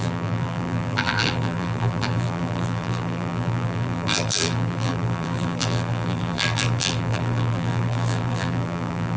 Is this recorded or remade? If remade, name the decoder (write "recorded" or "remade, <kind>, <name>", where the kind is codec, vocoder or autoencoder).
remade, vocoder, BigVGAN v2